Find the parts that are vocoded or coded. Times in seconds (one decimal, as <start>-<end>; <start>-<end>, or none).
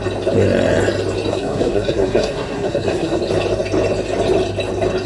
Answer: 1.3-3.2